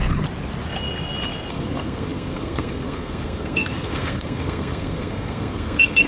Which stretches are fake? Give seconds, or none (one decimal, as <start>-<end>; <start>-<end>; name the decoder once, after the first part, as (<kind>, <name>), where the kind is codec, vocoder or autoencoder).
1.5-6.1 (codec, SNAC)